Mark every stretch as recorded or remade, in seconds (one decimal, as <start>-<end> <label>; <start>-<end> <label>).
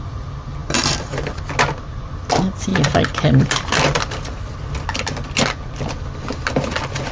0.0-0.6 recorded; 0.6-1.4 remade; 1.4-2.7 recorded; 2.7-4.1 remade; 4.1-7.1 recorded